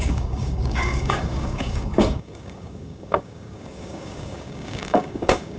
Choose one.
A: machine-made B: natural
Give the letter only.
A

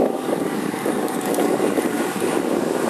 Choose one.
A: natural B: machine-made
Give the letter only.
B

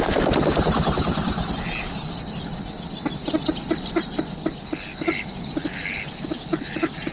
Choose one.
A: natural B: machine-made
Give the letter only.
A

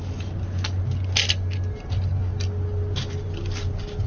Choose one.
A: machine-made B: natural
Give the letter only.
B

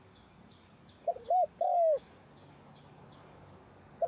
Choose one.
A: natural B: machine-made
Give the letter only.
B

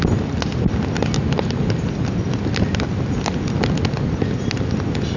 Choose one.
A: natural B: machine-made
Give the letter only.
A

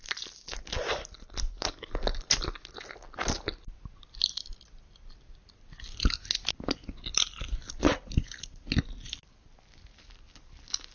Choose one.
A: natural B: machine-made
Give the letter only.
A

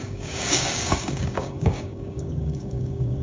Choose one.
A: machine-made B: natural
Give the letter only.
A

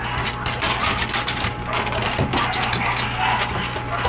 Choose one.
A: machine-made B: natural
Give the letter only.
B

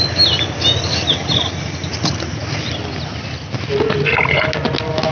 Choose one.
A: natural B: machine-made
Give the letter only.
A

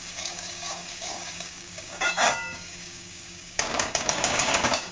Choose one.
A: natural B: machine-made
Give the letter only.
B